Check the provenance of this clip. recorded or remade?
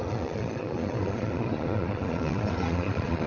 remade